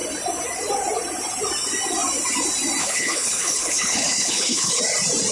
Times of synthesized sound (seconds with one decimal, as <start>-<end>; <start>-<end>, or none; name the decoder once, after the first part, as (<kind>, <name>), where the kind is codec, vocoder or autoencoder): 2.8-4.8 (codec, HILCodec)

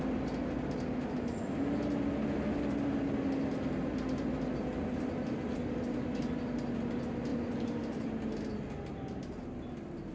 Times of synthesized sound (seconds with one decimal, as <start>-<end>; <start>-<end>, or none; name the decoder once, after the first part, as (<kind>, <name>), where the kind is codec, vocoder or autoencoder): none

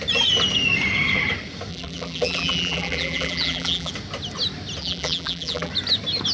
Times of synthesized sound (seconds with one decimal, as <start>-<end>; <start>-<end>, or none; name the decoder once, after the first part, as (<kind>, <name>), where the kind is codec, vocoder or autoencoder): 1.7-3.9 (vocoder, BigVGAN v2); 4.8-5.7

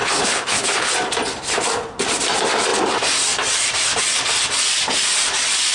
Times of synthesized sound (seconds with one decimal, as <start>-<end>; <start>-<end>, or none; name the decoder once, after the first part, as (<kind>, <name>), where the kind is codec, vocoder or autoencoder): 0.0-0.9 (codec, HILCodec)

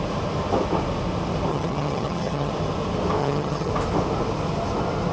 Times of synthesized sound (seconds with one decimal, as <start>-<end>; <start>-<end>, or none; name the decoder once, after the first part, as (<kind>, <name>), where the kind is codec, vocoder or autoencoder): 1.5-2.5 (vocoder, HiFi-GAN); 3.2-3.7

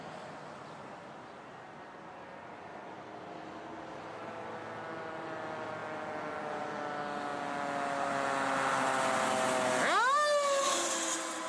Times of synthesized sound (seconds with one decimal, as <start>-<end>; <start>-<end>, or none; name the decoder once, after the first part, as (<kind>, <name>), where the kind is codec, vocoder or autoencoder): none

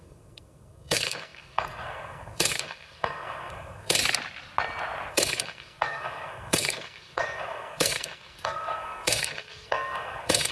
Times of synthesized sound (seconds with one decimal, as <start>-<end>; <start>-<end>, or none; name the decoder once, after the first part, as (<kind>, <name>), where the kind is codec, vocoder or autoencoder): 0.0-4.0 (codec, SNAC); 5.1-10.5